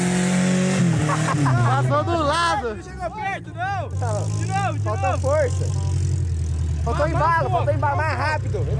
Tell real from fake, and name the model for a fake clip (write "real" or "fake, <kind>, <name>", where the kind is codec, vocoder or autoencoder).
real